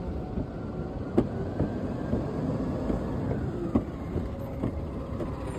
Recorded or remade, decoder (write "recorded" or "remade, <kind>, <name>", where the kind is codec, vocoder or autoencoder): recorded